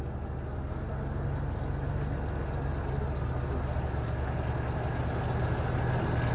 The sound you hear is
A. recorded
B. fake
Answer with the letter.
A